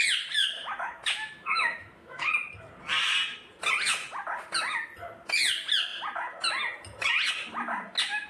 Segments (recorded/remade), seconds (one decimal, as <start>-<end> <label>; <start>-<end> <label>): 0.0-0.4 recorded; 0.4-2.3 remade; 2.3-8.3 recorded